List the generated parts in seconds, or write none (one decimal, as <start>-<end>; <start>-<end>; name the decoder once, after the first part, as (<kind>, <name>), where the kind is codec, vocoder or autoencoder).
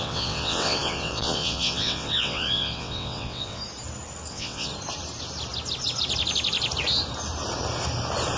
0.0-3.6 (vocoder, WaveNeXt); 4.3-4.7